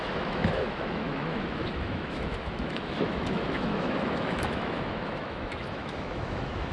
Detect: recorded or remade remade